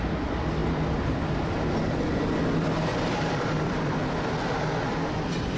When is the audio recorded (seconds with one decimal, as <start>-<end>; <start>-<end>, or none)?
0.0-2.9; 4.2-5.6